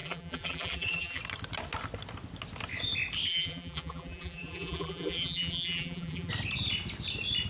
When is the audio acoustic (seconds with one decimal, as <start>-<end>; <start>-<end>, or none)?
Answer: 1.2-3.3; 6.3-7.5